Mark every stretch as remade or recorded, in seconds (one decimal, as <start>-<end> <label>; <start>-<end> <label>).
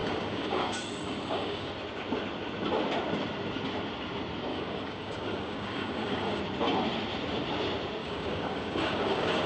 0.0-1.7 remade; 1.7-4.5 recorded; 4.5-6.4 remade; 6.4-8.0 recorded; 8.0-9.5 remade